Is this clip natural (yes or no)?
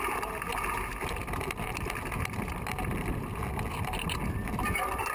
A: yes